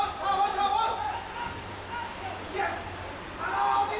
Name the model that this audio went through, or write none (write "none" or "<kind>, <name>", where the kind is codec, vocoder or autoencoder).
none